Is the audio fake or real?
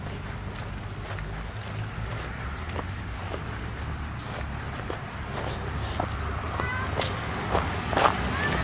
real